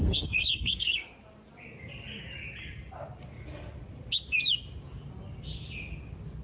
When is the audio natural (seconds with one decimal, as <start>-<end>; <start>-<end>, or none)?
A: 1.1-6.4